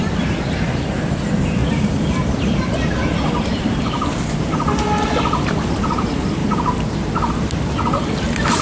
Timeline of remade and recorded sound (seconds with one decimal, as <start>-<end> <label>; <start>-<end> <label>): 0.0-1.6 recorded; 1.6-6.0 remade; 6.0-6.4 recorded; 6.4-7.3 remade; 7.3-8.6 recorded